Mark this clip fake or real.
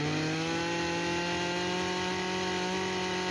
real